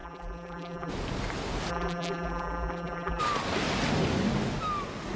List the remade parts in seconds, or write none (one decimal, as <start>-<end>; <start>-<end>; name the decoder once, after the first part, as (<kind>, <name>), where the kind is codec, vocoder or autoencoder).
0.0-0.9 (vocoder, BigVGAN v2); 1.7-3.2